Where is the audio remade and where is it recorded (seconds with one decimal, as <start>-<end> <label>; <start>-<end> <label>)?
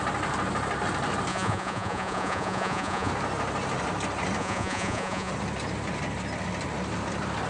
0.0-1.3 recorded; 1.3-3.1 remade; 3.1-4.4 recorded; 4.4-5.3 remade; 5.3-7.5 recorded